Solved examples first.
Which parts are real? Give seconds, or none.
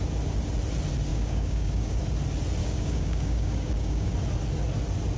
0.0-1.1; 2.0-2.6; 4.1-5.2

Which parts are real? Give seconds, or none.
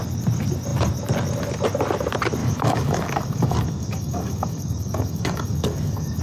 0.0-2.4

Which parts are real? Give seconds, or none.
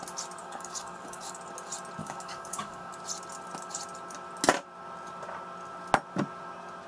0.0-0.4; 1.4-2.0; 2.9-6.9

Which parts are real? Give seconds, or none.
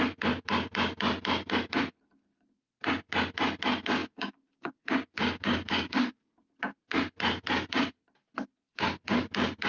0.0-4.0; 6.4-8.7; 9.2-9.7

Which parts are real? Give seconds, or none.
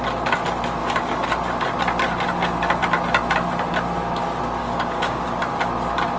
0.0-0.8; 1.3-4.6; 5.4-6.2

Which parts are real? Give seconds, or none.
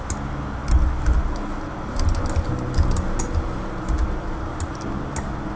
0.0-5.6